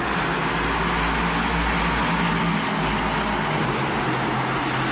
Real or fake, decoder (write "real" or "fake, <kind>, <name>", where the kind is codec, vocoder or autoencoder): real